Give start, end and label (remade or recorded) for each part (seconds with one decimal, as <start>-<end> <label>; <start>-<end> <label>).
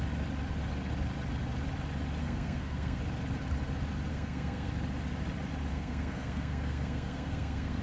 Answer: 0.0-2.2 recorded; 2.2-3.0 remade; 3.0-4.1 recorded; 4.1-4.7 remade; 4.7-5.7 recorded; 5.7-7.8 remade